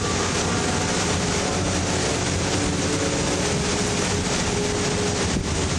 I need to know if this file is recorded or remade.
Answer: recorded